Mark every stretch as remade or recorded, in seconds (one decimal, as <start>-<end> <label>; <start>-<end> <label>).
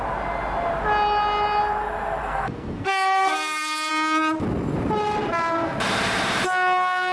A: 0.0-2.2 recorded; 2.2-3.9 remade; 3.9-7.1 recorded